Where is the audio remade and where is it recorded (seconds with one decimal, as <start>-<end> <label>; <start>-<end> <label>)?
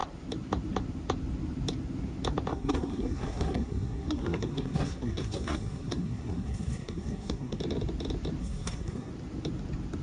0.0-2.5 recorded; 2.5-7.6 remade; 7.6-8.4 recorded; 8.4-9.1 remade; 9.1-10.0 recorded